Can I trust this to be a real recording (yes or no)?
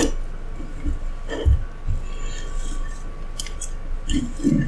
yes